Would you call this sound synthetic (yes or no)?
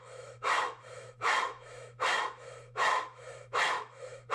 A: yes